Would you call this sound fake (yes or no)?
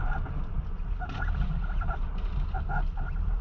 no